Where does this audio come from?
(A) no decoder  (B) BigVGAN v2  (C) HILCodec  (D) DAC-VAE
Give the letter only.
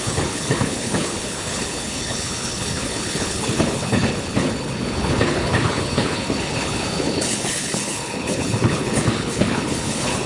C